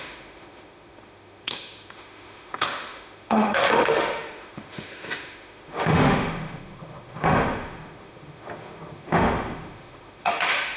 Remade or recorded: remade